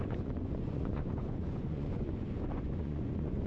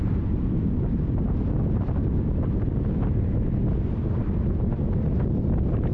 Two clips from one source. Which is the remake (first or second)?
first